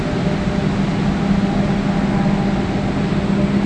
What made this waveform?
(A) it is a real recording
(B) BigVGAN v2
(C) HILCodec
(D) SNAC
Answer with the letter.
A